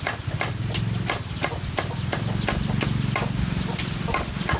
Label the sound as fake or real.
real